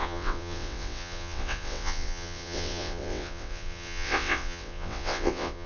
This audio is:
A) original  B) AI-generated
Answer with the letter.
B